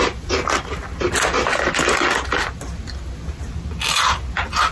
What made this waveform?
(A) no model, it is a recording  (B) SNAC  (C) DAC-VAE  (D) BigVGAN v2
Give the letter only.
A